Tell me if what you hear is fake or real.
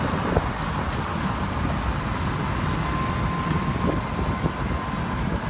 real